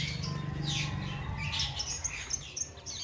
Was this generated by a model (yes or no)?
no